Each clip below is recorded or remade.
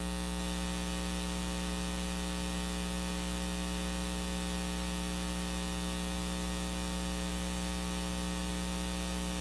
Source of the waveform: recorded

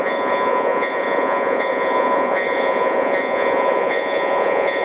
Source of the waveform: remade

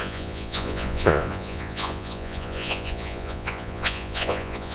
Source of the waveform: remade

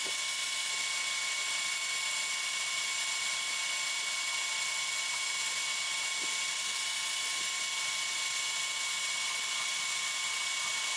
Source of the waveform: recorded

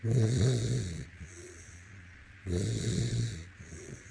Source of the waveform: remade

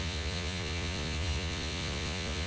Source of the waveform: remade